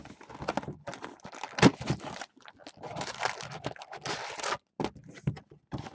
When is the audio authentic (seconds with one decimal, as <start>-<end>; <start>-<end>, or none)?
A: 0.0-5.9